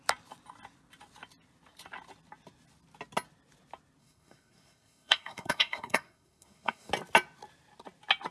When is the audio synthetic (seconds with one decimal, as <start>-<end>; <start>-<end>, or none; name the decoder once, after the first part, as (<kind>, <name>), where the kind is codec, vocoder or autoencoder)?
4.0-6.9 (codec, SNAC)